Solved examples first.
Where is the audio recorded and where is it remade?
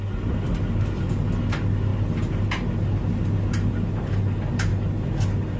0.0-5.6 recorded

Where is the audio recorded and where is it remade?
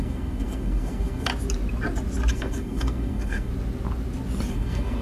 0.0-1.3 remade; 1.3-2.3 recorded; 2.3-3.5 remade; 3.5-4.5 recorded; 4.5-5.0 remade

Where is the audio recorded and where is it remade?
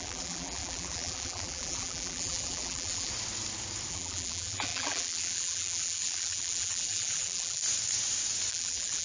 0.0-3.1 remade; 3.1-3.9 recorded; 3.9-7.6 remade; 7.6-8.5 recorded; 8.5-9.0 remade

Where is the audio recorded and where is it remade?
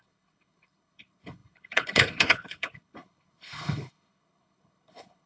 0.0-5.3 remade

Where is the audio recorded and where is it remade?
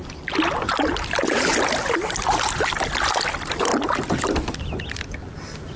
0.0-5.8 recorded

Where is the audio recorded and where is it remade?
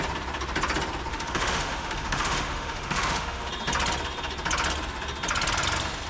0.0-1.1 recorded; 1.1-3.5 remade; 3.5-6.1 recorded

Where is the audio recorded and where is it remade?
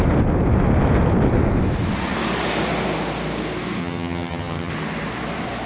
0.0-3.8 recorded; 3.8-4.7 remade; 4.7-5.7 recorded